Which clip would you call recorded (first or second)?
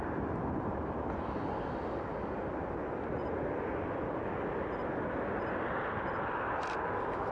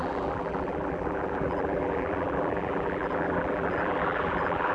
first